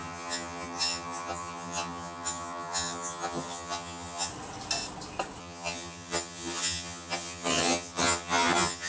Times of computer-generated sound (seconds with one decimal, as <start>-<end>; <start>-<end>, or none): 0.0-4.3; 5.4-8.9